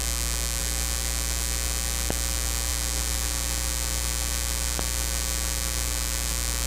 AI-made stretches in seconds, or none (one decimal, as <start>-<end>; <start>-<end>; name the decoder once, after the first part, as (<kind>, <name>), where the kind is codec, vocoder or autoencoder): none